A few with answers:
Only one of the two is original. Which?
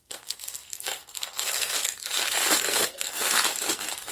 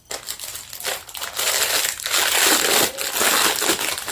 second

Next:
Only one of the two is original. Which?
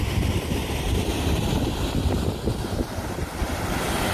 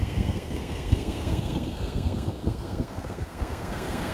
first